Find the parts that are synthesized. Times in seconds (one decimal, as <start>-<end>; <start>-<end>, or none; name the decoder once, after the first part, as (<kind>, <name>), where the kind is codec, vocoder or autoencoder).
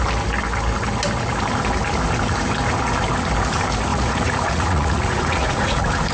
3.9-6.1 (vocoder, Vocos)